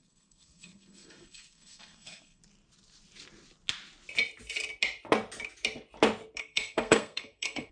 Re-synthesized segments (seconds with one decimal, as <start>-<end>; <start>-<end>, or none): 0.0-2.4; 6.4-7.7